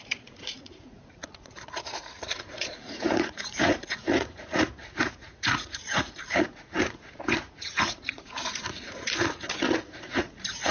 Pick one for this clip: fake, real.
fake